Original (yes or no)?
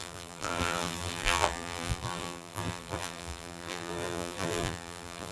no